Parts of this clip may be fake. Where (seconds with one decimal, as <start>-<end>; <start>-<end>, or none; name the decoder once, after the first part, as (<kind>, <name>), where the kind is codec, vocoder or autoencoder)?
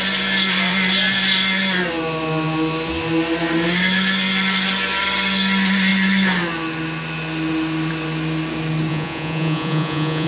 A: 8.9-10.3 (vocoder, Vocos)